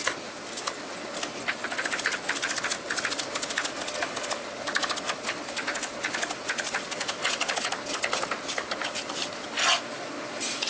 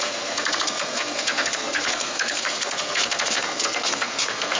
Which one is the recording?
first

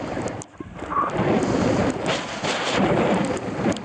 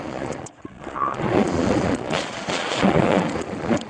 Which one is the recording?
first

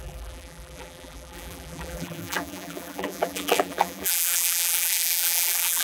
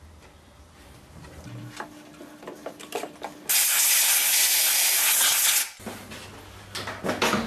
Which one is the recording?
second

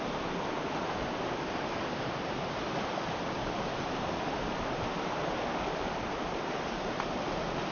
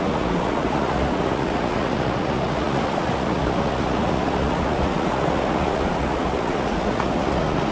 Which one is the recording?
first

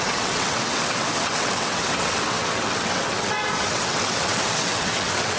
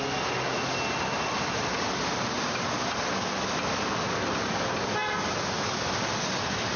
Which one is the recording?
second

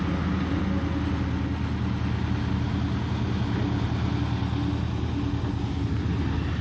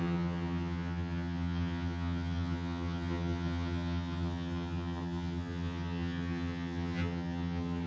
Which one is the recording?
first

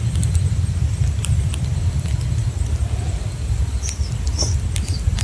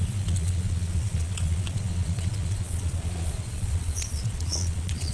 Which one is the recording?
first